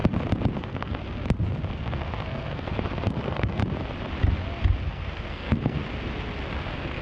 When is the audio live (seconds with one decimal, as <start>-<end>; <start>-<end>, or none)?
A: 0.0-0.6; 1.0-1.7; 3.6-4.9; 5.8-6.5